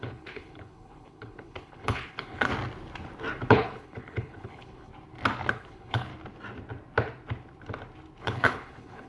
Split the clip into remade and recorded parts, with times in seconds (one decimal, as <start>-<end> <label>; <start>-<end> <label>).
0.0-2.5 remade; 2.5-3.5 recorded; 3.5-4.9 remade; 4.9-5.5 recorded; 5.5-6.1 remade; 6.1-8.2 recorded; 8.2-9.1 remade